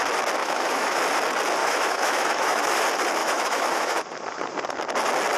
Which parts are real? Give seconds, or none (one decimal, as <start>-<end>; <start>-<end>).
0.0-0.4; 1.0-1.6; 2.7-3.2; 4.0-5.4